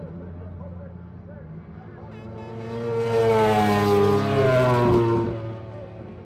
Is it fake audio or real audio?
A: real